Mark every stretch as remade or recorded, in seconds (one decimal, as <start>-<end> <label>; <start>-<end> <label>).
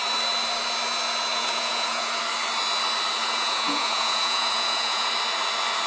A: 0.0-1.3 recorded; 1.3-2.2 remade; 2.2-3.2 recorded; 3.2-5.1 remade; 5.1-5.9 recorded